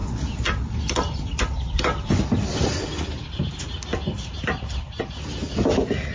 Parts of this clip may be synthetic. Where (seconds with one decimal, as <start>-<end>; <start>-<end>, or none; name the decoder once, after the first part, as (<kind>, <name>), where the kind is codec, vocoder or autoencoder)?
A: none